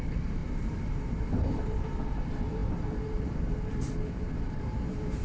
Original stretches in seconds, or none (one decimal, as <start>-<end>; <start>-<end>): none